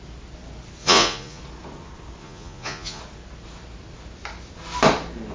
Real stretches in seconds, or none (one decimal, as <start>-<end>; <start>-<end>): 0.0-0.8; 1.4-2.2; 3.0-5.3